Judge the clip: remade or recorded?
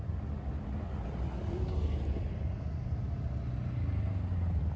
recorded